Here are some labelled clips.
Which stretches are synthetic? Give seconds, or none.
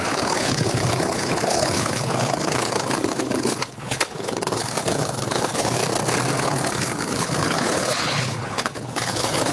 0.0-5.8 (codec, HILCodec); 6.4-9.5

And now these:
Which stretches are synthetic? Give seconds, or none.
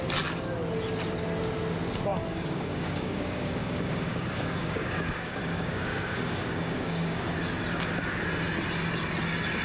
2.1-7.3 (codec, DAC)